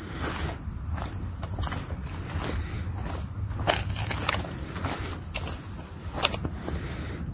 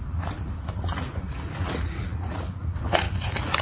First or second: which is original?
first